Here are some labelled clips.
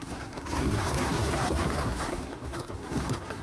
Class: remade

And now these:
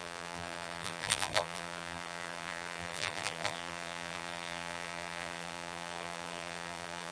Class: remade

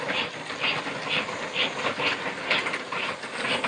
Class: recorded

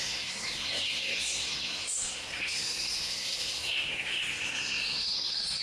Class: remade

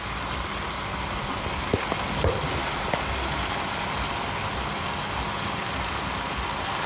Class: recorded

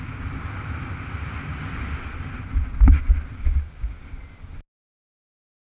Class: recorded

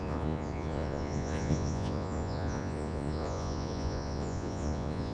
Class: remade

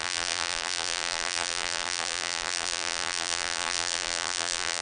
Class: remade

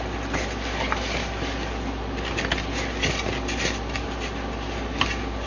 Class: recorded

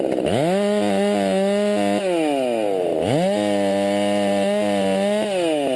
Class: recorded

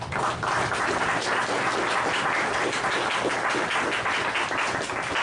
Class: recorded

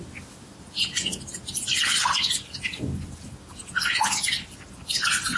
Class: recorded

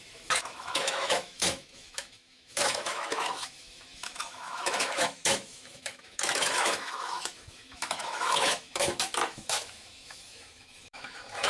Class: remade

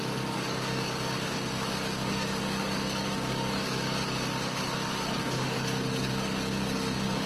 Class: remade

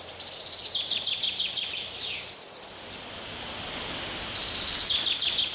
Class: recorded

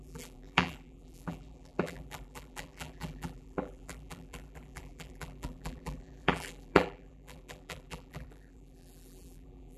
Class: remade